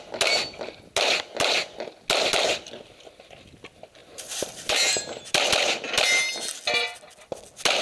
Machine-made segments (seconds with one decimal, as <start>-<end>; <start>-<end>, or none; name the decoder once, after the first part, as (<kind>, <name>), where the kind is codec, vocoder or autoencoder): 4.0-5.2 (vocoder, BigVGAN v2)